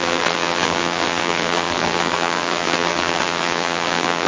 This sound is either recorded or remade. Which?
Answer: remade